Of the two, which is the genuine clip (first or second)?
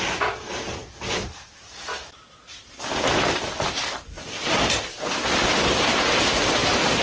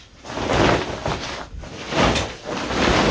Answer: second